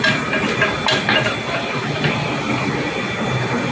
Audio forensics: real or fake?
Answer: real